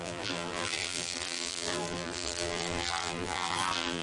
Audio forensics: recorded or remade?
remade